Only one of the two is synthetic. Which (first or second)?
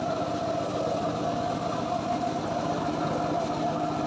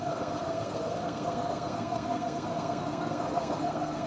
second